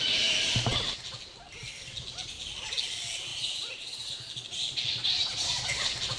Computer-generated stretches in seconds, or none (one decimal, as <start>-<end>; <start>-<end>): none